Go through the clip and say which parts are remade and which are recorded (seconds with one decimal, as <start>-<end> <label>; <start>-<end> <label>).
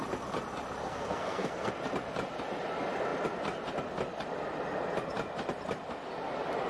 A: 0.0-0.8 recorded; 0.8-1.7 remade; 1.7-6.7 recorded